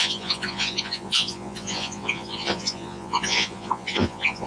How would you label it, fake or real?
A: fake